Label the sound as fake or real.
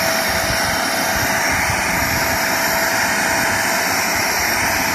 real